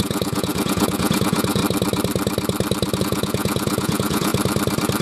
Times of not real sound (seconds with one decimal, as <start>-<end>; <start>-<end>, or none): 0.0-1.6; 3.0-4.3